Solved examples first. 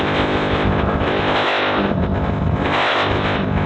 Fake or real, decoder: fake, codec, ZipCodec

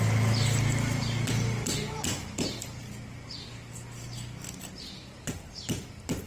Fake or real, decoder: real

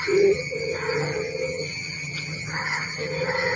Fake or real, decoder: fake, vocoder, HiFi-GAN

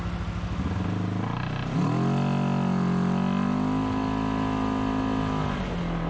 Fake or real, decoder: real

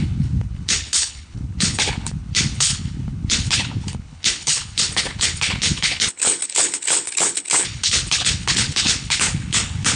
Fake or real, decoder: fake, codec, HILCodec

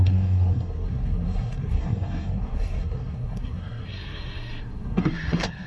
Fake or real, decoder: fake, codec, SNAC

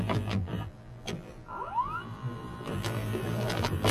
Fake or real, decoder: fake, vocoder, BigVGAN v2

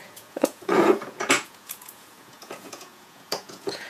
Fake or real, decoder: fake, vocoder, Vocos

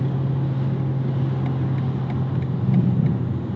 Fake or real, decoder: real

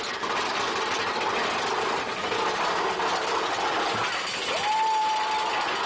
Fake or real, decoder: real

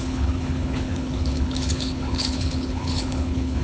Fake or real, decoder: fake, codec, HILCodec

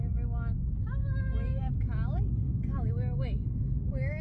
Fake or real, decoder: real